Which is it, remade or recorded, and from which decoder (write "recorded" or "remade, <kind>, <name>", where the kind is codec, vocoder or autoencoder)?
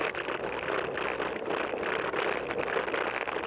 recorded